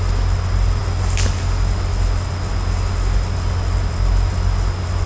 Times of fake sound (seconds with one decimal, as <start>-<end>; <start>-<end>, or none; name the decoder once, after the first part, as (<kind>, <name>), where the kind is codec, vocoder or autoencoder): none